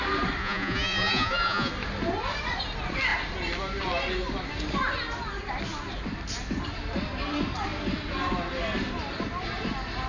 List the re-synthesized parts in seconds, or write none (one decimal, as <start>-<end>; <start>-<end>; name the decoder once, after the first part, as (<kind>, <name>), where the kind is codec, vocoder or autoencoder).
0.4-1.7 (vocoder, Vocos)

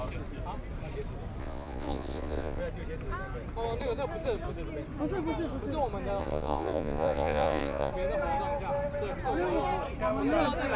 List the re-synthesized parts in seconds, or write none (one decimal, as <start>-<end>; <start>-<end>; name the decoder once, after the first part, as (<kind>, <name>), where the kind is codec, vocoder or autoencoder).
1.4-2.6 (vocoder, Vocos); 6.2-7.9

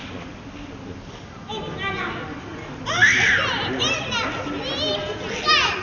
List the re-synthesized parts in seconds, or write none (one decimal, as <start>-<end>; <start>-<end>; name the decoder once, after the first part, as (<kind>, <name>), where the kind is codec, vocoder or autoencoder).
none

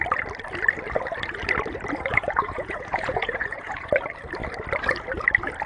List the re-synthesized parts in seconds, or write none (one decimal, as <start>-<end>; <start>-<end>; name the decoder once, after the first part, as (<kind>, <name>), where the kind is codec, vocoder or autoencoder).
2.1-3.9 (vocoder, Vocos)

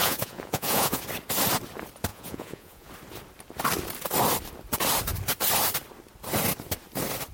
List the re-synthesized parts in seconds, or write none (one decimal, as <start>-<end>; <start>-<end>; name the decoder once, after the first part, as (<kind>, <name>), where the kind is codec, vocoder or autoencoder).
0.0-1.0 (vocoder, Vocos); 2.1-2.9

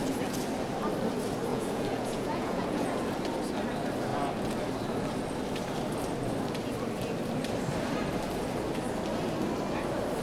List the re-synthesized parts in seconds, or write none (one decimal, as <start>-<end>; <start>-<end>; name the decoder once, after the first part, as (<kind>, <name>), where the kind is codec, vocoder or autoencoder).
1.5-3.0 (vocoder, Vocos)

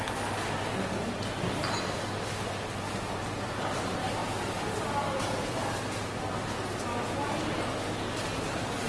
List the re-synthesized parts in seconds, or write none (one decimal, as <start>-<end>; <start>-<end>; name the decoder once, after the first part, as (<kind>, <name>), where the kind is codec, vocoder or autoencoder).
none

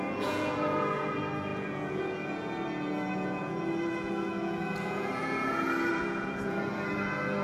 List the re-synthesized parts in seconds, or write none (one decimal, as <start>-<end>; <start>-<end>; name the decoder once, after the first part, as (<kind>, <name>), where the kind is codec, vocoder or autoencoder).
0.0-7.4 (vocoder, Vocos)